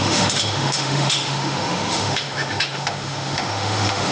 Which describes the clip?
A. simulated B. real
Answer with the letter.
A